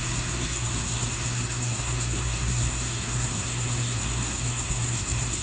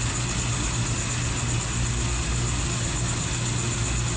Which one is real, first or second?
second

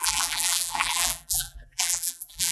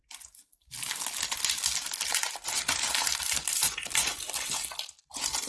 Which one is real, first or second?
second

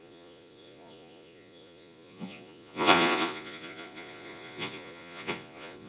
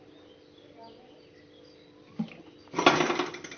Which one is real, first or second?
second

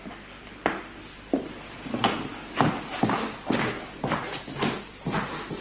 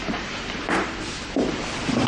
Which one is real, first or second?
first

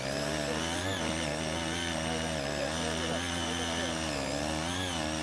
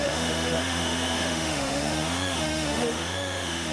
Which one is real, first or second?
first